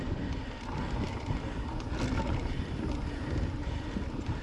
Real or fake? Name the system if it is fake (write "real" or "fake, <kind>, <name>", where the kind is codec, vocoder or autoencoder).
real